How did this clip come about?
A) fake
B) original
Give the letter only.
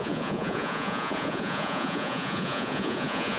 A